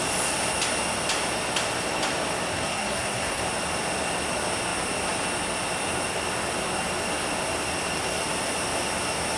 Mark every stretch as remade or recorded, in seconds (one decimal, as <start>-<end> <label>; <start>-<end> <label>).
0.0-2.5 recorded; 2.5-3.4 remade; 3.4-9.4 recorded

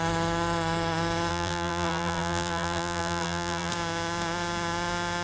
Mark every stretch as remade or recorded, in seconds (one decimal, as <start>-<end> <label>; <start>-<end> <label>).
0.0-1.3 recorded; 1.3-3.7 remade; 3.7-5.2 recorded

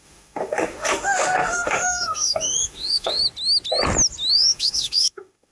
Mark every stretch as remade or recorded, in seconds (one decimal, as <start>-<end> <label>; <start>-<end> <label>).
0.0-3.2 remade; 3.2-4.3 recorded; 4.3-5.5 remade

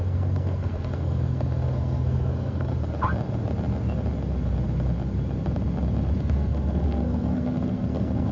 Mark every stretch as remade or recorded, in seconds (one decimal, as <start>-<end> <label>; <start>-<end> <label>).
0.0-2.7 remade; 2.7-6.2 recorded; 6.2-8.3 remade

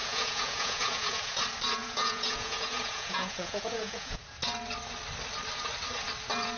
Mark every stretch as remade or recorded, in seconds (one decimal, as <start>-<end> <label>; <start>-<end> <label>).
0.0-1.4 remade; 1.4-1.8 recorded; 1.8-4.2 remade; 4.2-6.6 recorded

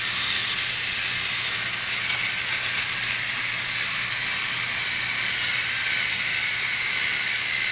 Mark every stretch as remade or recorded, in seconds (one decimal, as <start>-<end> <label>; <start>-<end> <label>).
0.0-7.7 recorded

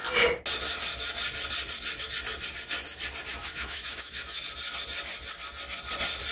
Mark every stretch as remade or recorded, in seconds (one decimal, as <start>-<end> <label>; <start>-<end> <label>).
0.0-3.3 recorded; 3.3-4.4 remade; 4.4-6.3 recorded

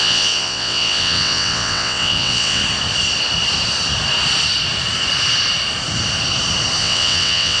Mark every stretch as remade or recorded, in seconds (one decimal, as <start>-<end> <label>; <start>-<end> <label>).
0.0-2.6 remade; 2.6-6.8 recorded; 6.8-7.6 remade